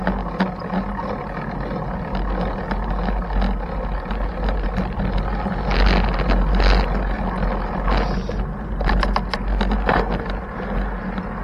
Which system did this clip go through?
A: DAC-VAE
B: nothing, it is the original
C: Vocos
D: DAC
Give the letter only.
B